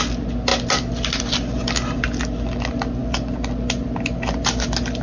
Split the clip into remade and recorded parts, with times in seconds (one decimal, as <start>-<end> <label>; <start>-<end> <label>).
0.0-5.0 recorded